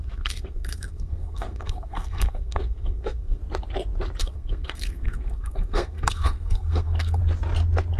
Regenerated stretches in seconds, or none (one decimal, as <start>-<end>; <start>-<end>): 0.0-3.4; 4.2-7.2